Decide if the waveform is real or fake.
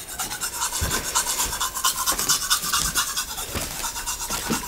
real